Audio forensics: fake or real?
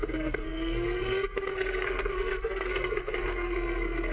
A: fake